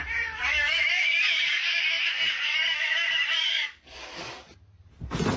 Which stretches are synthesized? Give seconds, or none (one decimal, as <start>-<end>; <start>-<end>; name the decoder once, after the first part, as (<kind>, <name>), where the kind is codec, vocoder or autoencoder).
0.6-3.8 (codec, DAC)